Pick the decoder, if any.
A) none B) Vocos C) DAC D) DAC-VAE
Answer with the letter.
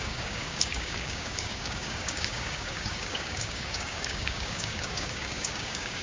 C